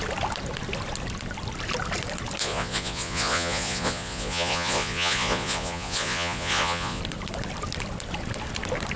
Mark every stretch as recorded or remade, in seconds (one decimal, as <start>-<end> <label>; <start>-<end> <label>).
0.0-2.4 recorded; 2.4-7.0 remade; 7.0-9.0 recorded